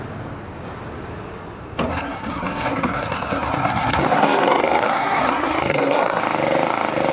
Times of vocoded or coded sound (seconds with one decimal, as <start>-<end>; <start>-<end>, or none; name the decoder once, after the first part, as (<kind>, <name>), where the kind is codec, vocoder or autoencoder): 1.9-6.2 (codec, SNAC)